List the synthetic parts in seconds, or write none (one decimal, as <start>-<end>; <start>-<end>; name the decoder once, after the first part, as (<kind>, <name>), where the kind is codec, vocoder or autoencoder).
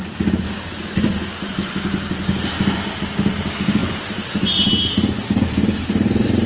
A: none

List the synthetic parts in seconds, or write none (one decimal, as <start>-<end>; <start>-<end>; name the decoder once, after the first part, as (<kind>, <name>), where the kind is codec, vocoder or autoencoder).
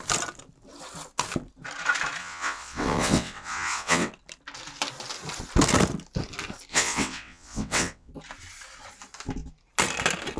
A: 2.2-4.1 (vocoder, WaveNeXt); 6.7-8.1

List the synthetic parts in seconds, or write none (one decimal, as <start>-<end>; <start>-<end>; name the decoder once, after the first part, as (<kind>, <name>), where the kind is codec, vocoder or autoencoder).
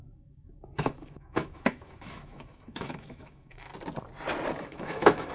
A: 0.0-3.7 (autoencoder, DAC-VAE); 4.6-5.3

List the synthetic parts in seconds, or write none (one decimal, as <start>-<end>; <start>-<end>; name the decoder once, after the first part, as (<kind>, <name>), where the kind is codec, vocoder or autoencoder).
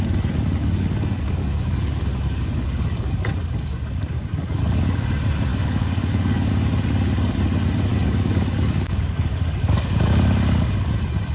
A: 0.6-4.8 (codec, DAC); 5.5-6.5; 7.9-10.9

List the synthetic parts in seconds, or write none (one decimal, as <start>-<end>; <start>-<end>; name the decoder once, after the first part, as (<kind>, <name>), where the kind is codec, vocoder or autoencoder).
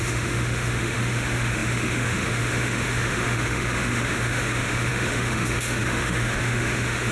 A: 0.0-7.1 (autoencoder, DAC-VAE)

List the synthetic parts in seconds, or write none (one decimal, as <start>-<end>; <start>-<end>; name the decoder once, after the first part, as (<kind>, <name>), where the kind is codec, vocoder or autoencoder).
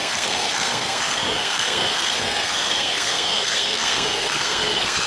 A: 0.0-5.1 (codec, SNAC)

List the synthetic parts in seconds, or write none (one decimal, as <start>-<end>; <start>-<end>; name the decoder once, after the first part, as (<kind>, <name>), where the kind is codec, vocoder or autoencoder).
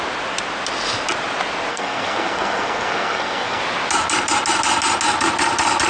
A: 1.7-3.6 (codec, SNAC)